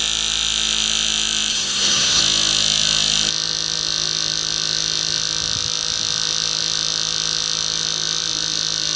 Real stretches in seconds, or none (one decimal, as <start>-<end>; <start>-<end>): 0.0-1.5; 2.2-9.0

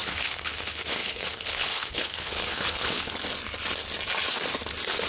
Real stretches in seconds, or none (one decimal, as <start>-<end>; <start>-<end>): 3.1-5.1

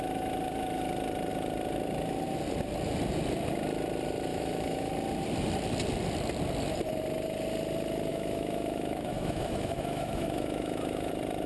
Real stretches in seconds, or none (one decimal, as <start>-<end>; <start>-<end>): 0.0-4.3; 4.9-8.1; 11.1-11.5

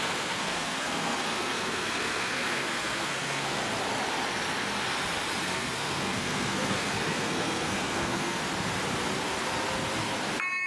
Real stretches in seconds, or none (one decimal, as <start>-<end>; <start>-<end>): 3.6-5.4; 8.4-10.7

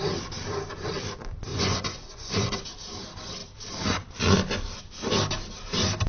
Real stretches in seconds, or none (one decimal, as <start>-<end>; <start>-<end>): 0.0-1.5; 2.6-6.1

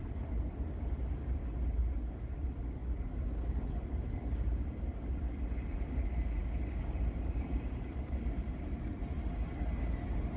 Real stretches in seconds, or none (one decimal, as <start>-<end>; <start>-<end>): 0.0-10.4